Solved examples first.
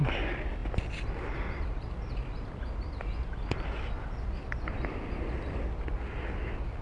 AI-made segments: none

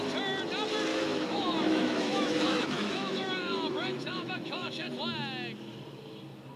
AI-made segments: 0.9-4.9 (autoencoder, DAC-VAE)

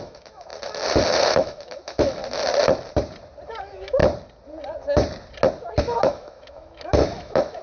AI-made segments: 0.0-0.5 (autoencoder, DAC-VAE); 1.2-2.2; 3.6-4.0; 5.8-7.6

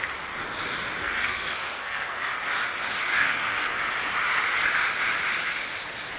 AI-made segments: 1.0-2.3 (codec, SNAC); 3.2-3.9

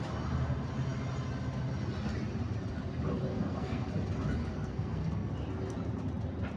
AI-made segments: 3.3-3.9 (codec, SNAC); 4.4-5.3

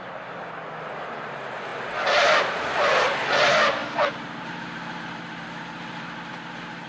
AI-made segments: none

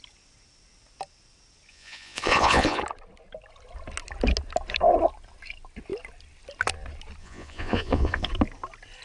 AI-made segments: 1.7-2.8 (vocoder, Vocos); 7.2-8.3

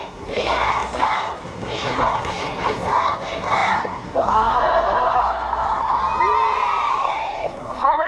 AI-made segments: 0.0-6.0 (codec, SNAC); 6.9-8.1